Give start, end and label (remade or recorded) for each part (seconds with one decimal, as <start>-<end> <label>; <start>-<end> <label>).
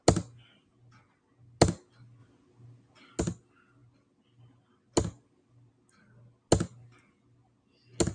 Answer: 0.0-8.1 recorded